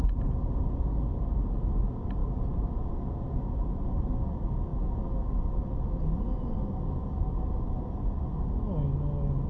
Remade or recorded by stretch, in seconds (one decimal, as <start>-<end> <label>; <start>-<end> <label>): 0.0-9.5 recorded